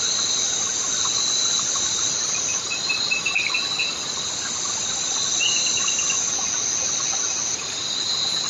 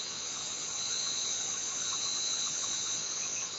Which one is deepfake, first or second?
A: second